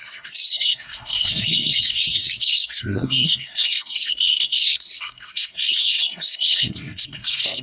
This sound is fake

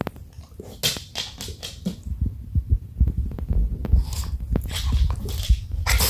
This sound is real